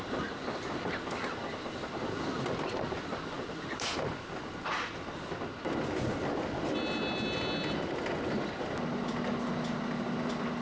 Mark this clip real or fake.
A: real